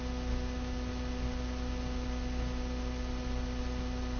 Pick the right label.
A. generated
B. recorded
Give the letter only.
B